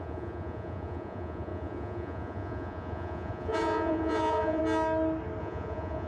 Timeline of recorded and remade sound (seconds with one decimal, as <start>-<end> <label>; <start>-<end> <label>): 0.0-4.6 remade; 4.6-5.4 recorded; 5.4-6.1 remade